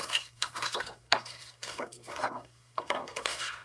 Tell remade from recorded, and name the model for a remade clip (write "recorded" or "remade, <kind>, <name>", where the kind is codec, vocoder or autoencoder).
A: remade, codec, SNAC